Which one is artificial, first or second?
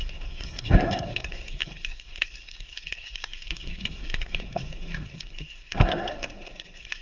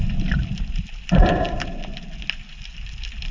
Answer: first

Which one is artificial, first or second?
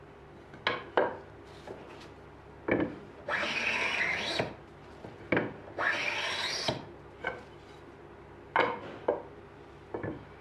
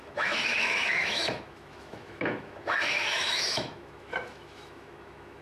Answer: second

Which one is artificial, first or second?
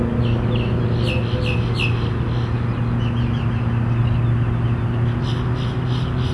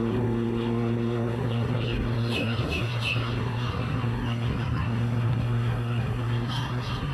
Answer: second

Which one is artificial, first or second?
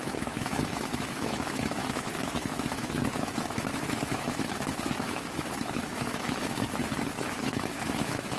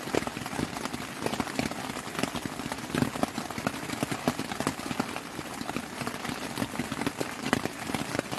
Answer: first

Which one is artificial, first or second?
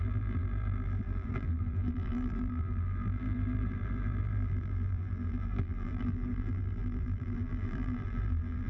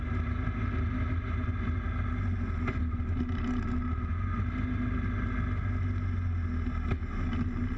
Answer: first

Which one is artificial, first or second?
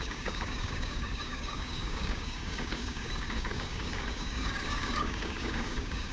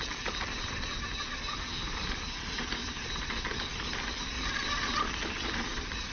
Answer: first